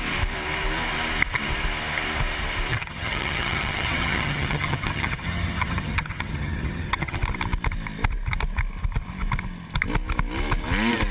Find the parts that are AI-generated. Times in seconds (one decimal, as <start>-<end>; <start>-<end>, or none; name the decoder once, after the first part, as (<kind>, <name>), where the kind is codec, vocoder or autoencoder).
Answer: 2.7-7.2 (vocoder, HiFi-GAN)